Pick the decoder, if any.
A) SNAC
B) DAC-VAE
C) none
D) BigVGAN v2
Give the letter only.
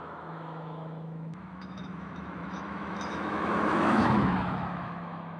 B